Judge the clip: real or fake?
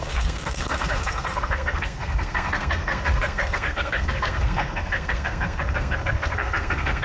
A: fake